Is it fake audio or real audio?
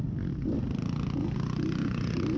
fake